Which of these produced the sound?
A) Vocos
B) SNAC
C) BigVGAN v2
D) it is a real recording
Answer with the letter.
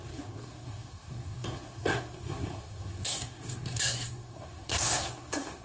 B